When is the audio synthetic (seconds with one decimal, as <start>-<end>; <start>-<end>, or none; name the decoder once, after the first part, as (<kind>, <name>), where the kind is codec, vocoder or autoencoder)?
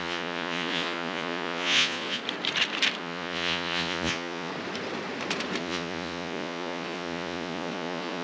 0.0-2.2 (vocoder, Vocos); 3.0-4.5; 5.6-8.2